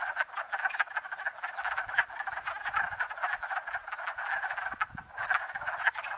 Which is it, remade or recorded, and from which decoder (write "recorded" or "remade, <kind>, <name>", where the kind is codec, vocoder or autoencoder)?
recorded